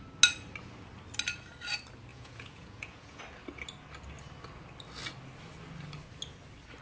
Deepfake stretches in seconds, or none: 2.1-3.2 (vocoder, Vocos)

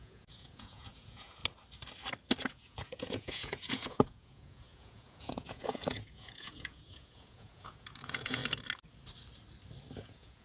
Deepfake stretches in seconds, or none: 0.0-1.4 (vocoder, Vocos); 2.5-8.4; 10.0-10.4

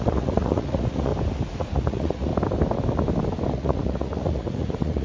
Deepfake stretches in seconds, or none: 0.0-1.1 (vocoder, Vocos); 1.6-2.3; 3.5-5.0

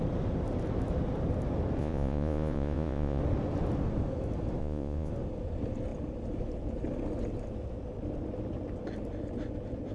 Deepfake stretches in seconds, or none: 1.8-3.2 (vocoder, Vocos); 4.6-5.1

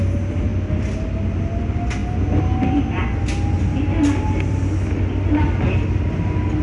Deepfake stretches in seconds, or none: none